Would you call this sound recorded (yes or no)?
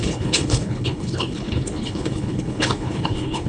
no